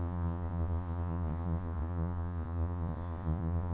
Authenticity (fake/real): fake